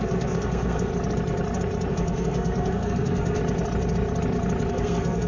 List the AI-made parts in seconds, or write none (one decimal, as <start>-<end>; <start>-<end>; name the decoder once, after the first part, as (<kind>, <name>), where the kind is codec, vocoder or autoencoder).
0.0-0.9 (codec, SNAC); 1.9-3.4; 4.7-5.3